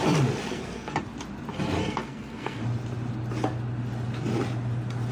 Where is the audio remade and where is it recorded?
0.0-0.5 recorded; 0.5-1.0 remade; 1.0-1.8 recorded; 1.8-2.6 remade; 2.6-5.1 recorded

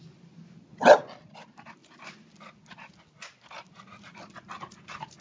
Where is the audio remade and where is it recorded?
0.0-5.2 recorded

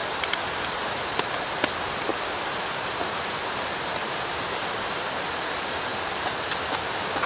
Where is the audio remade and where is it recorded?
0.0-2.1 remade; 2.1-2.8 recorded; 2.8-3.9 remade; 3.9-4.5 recorded; 4.5-5.9 remade; 5.9-7.3 recorded

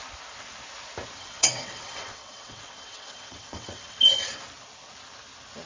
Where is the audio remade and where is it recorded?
0.0-1.2 recorded; 1.2-4.4 remade; 4.4-5.7 recorded

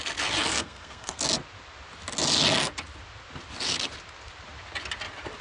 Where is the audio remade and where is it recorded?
0.0-0.5 recorded; 0.5-1.2 remade; 1.2-5.4 recorded